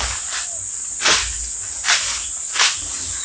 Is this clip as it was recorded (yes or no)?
yes